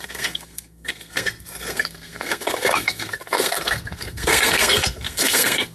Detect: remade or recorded remade